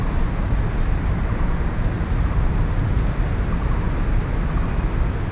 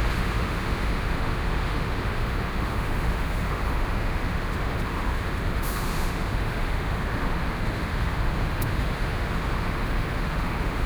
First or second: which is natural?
first